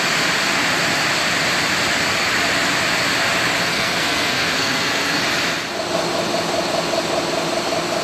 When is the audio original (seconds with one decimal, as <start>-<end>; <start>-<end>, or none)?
0.0-3.7; 5.2-8.0